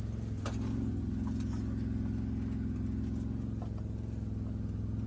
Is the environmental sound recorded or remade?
recorded